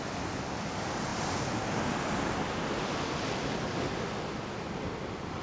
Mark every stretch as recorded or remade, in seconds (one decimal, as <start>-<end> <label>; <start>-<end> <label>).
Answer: 0.0-5.4 recorded